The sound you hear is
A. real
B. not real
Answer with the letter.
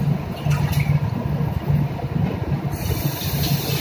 A